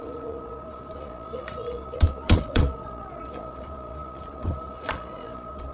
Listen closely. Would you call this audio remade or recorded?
remade